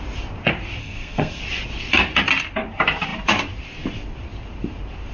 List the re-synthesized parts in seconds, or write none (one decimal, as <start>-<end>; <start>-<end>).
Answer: 0.8-1.4